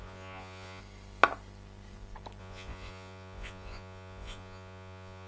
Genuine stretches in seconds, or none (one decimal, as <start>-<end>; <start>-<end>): 0.8-2.4